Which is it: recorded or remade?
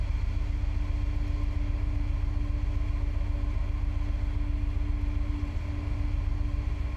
recorded